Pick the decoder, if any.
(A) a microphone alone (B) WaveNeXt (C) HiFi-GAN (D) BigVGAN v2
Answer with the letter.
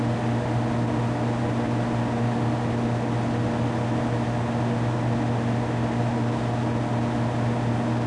A